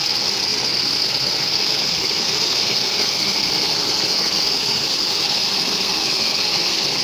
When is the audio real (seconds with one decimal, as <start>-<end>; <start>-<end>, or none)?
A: none